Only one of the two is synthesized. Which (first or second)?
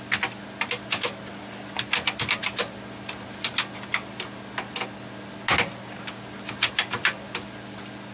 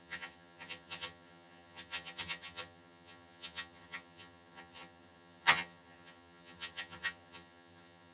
second